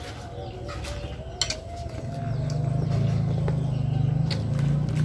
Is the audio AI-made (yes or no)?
no